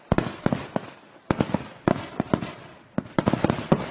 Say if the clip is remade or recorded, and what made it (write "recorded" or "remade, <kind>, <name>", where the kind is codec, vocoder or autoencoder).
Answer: recorded